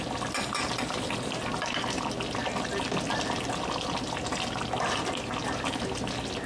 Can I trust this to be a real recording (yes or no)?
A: yes